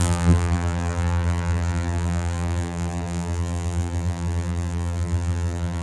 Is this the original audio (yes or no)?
no